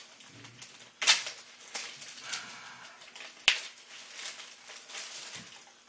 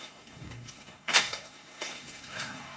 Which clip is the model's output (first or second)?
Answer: second